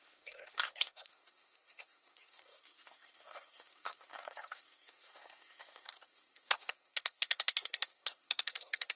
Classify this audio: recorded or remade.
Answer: remade